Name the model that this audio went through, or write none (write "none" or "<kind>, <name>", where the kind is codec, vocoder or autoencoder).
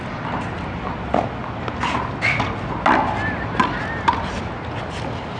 none